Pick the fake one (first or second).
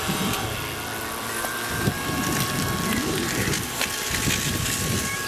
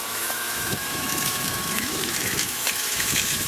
second